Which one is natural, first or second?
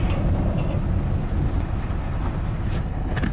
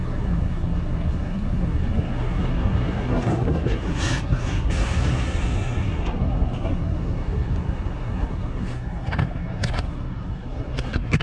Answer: first